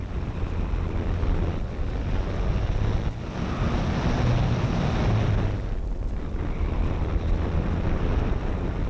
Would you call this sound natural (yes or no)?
yes